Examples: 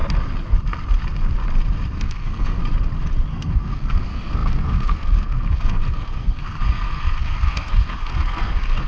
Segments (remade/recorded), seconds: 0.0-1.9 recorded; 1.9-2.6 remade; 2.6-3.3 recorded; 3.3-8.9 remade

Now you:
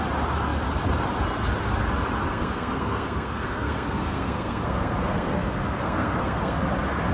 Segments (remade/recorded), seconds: 0.0-2.3 recorded; 2.3-6.6 remade; 6.6-7.1 recorded

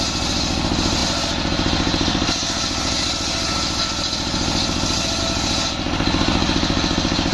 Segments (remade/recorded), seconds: 0.0-7.3 recorded